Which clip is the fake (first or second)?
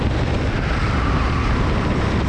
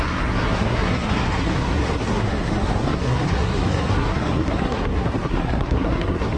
second